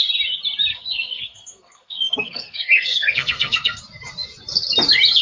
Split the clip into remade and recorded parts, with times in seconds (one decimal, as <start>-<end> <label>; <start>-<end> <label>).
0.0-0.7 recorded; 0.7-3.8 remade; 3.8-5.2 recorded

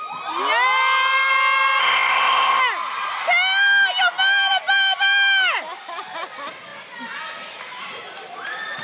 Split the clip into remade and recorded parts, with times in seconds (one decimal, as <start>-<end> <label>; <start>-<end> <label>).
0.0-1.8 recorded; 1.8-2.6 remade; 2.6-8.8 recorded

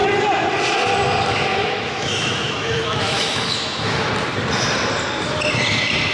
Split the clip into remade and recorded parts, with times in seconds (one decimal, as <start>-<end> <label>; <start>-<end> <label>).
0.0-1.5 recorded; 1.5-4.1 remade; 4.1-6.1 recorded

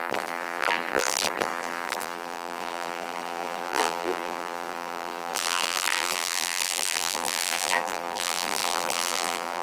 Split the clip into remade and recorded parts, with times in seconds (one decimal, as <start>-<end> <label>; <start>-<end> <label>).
0.0-9.6 remade

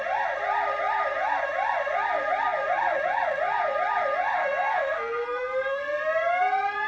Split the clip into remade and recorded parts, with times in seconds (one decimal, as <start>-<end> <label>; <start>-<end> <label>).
0.0-4.4 recorded; 4.4-5.8 remade; 5.8-6.9 recorded

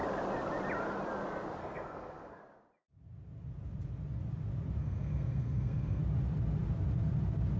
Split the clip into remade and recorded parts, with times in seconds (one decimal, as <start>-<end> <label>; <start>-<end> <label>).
0.0-1.6 recorded; 1.6-2.4 remade; 2.4-4.8 recorded; 4.8-6.0 remade; 6.0-7.6 recorded

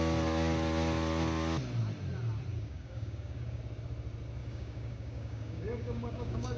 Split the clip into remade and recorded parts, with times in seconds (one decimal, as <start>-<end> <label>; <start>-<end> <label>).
0.0-2.5 recorded; 2.5-3.6 remade; 3.6-4.4 recorded; 4.4-6.6 remade

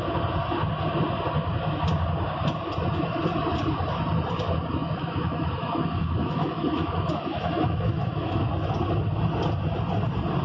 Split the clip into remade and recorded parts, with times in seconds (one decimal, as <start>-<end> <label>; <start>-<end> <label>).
0.0-4.8 recorded; 4.8-8.5 remade; 8.5-10.4 recorded